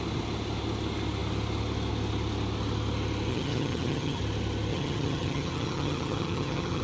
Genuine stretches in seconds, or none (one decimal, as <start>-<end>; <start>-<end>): 0.0-3.3; 4.2-4.7

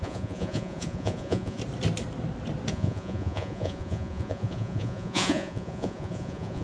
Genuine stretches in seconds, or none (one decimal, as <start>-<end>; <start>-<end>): 1.6-2.7

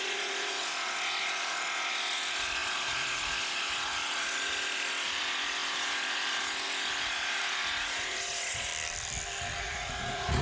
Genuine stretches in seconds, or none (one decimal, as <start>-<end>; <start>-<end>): 8.7-9.6

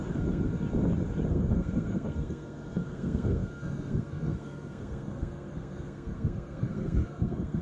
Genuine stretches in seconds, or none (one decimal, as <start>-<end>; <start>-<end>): 0.5-1.3

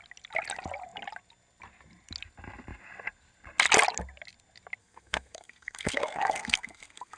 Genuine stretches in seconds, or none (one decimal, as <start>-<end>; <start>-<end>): 0.0-4.8

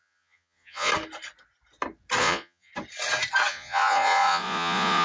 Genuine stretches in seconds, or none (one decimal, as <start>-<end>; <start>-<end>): 0.9-2.2; 2.7-3.5

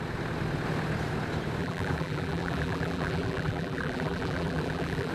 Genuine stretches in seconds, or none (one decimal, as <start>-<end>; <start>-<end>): 0.0-1.6